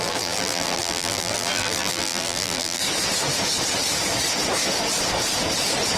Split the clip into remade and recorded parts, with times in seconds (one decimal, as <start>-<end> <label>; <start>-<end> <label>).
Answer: 0.0-2.8 remade; 2.8-6.0 recorded